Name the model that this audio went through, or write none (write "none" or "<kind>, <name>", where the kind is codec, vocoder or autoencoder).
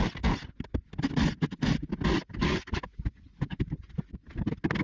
none